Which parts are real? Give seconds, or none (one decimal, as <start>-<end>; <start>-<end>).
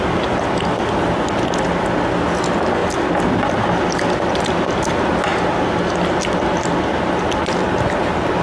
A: 0.0-8.4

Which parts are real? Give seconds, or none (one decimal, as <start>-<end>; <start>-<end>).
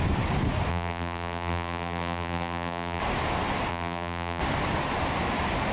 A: 0.0-0.7; 3.0-3.7; 4.4-5.7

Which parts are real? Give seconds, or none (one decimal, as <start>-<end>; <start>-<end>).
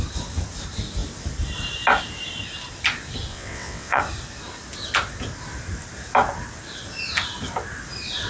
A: 0.0-3.3; 4.0-8.3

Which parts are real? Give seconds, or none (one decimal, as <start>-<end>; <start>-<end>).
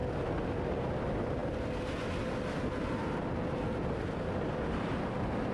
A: 0.0-0.8; 1.4-4.5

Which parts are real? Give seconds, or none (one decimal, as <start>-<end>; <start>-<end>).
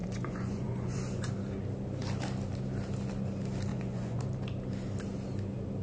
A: 1.3-3.7; 4.2-5.8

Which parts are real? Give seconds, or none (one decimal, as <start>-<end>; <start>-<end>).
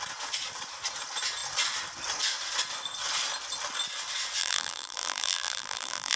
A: 0.0-4.4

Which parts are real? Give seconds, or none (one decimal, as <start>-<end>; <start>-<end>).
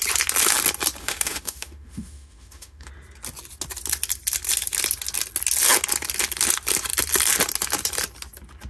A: 0.0-1.0; 2.9-8.7